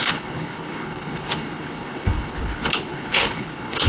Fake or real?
fake